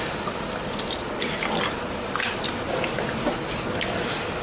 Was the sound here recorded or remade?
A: recorded